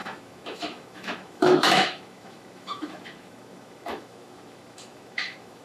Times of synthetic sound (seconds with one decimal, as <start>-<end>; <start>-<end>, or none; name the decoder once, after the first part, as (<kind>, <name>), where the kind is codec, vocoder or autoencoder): 0.0-5.6 (autoencoder, DAC-VAE)